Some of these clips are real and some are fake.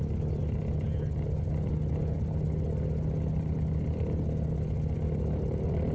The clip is real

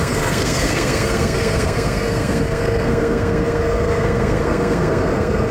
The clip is fake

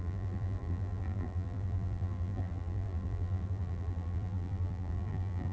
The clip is fake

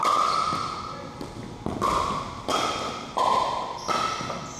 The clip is real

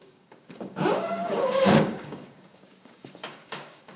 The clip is fake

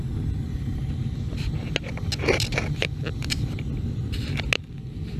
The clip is real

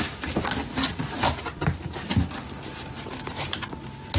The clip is real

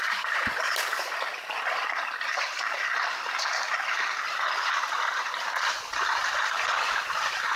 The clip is real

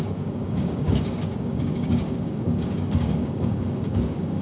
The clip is fake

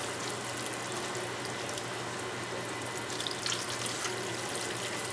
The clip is real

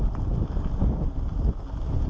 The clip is real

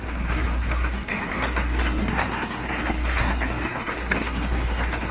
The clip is fake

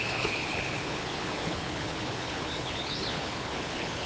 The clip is fake